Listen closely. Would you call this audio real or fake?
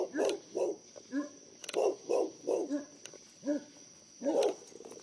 real